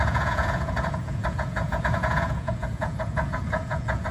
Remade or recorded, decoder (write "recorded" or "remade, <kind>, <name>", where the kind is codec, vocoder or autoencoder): remade, vocoder, Vocos